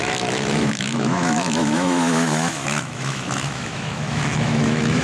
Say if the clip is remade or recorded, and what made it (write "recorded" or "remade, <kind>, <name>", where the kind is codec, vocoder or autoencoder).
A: remade, autoencoder, DAC-VAE